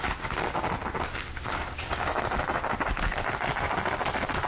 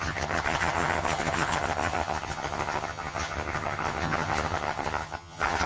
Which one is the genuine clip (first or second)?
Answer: first